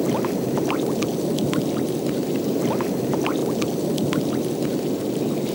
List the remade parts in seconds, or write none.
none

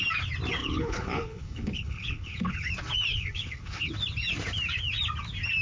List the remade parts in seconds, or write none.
0.6-2.7 (codec, HILCodec); 3.1-3.9

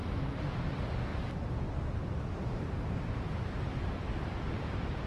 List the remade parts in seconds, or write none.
2.4-4.3 (vocoder, BigVGAN v2)

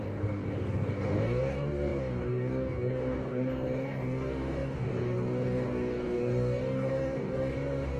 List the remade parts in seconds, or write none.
0.0-8.0 (codec, DAC)

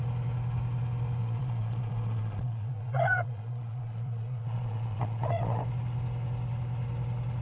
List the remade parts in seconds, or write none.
1.2-5.6 (vocoder, Vocos)